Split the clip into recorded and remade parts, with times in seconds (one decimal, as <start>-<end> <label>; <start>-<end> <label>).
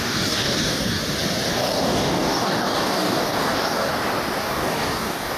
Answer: 0.0-1.0 remade; 1.0-1.5 recorded; 1.5-3.9 remade; 3.9-4.4 recorded; 4.4-5.4 remade